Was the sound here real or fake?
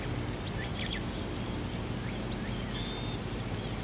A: real